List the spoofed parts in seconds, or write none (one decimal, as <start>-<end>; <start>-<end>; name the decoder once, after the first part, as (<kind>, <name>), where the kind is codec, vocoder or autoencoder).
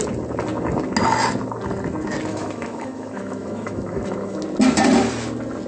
2.3-4.4 (autoencoder, DAC-VAE)